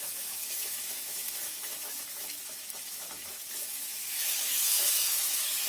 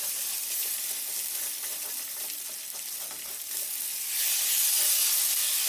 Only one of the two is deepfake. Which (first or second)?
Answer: first